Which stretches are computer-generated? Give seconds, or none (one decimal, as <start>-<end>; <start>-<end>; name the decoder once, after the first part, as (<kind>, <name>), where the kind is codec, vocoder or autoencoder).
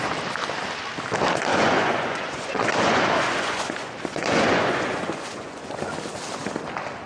1.5-5.8 (vocoder, Vocos)